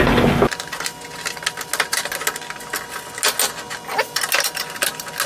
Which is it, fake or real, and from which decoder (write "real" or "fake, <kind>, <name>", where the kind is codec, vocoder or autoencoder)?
real